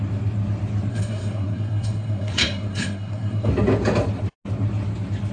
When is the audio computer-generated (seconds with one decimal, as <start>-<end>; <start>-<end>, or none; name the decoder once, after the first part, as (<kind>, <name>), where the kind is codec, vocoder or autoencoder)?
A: 0.9-3.5 (codec, SNAC)